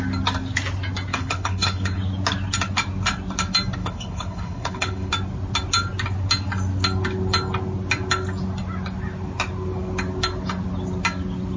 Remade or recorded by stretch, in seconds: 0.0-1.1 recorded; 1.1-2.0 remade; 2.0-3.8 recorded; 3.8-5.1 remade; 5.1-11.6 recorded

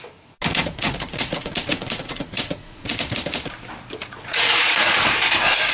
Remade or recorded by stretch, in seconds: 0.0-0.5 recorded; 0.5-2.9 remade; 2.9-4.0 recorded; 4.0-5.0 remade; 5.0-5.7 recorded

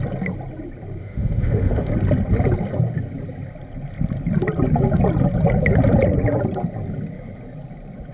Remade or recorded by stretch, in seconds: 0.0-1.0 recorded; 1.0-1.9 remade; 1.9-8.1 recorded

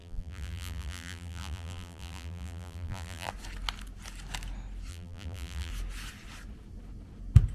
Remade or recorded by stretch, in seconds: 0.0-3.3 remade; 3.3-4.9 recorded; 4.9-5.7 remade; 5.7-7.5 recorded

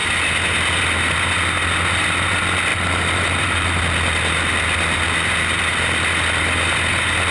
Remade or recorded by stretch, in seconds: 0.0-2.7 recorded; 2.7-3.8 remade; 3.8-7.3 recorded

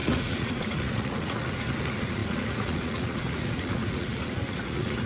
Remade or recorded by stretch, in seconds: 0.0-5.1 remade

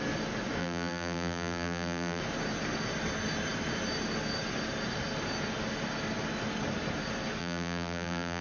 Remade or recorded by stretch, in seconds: 0.0-0.6 recorded; 0.6-2.2 remade; 2.2-7.4 recorded; 7.4-8.4 remade

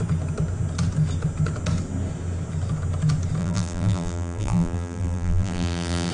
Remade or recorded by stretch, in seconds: 0.0-3.4 recorded; 3.4-6.1 remade